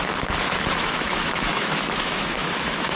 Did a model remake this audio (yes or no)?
yes